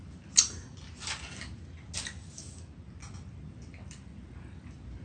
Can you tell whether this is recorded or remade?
recorded